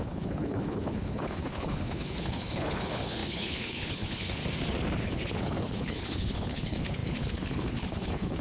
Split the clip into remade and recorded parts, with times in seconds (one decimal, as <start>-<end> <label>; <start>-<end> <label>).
0.0-4.4 remade; 4.4-5.0 recorded; 5.0-8.4 remade